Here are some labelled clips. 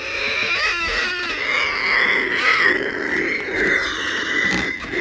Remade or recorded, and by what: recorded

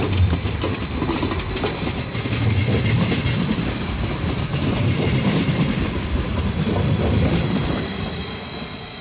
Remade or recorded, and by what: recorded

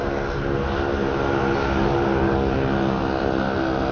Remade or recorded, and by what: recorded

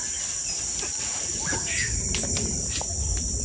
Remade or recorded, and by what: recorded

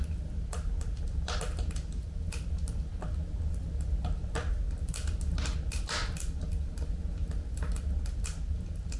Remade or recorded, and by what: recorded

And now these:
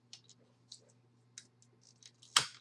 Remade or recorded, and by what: recorded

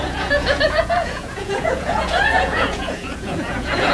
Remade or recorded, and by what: remade, vocoder, Vocos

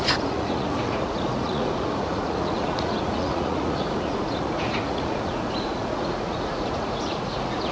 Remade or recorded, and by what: remade, vocoder, Vocos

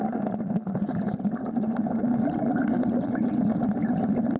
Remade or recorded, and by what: recorded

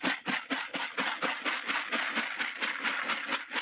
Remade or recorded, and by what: recorded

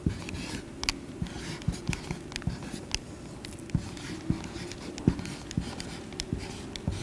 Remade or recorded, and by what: recorded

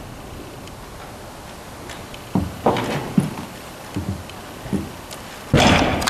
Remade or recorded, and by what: recorded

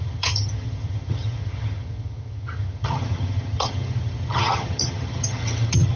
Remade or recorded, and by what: remade, vocoder, HiFi-GAN